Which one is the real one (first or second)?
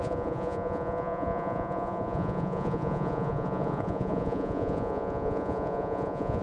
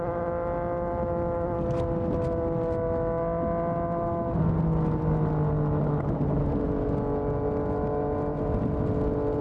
second